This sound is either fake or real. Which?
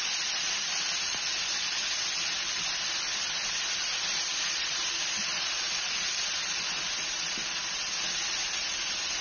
real